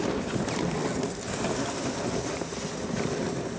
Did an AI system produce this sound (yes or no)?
no